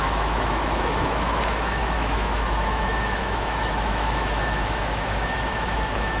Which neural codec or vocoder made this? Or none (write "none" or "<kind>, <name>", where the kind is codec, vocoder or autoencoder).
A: autoencoder, DAC-VAE